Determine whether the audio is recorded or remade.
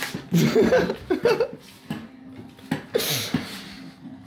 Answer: recorded